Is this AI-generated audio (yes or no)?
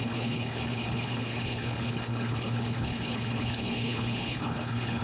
yes